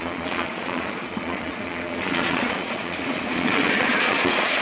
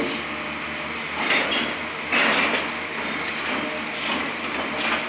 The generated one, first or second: first